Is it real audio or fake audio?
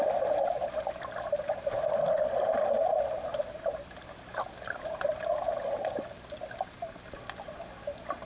real